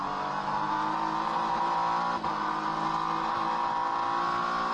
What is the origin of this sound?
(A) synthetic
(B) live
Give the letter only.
B